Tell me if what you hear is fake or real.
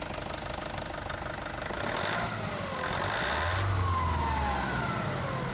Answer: real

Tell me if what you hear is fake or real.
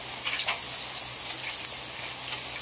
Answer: real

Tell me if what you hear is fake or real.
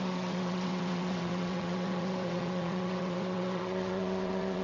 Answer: fake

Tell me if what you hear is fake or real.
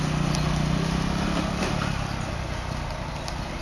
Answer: real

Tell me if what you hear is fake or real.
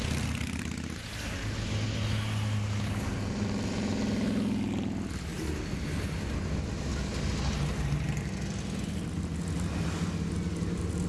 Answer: real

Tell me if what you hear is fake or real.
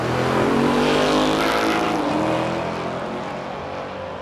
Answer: real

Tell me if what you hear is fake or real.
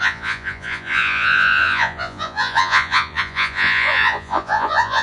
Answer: fake